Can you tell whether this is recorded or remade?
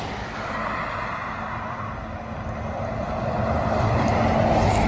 recorded